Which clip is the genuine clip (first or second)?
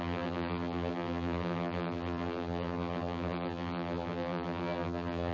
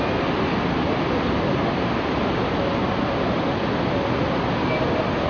second